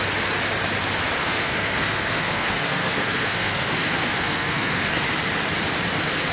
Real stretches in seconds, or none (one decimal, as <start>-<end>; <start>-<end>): 0.0-1.2; 5.0-6.3